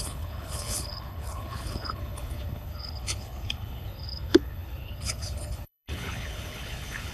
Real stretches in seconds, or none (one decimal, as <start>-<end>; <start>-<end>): none